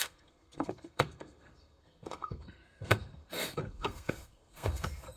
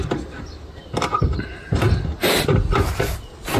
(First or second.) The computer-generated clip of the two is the first